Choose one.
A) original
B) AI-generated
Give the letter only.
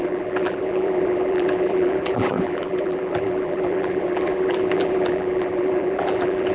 B